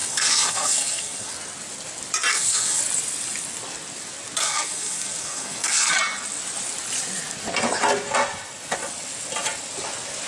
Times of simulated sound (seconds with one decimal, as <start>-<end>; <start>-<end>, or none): 0.0-1.3; 2.3-2.8; 4.4-5.9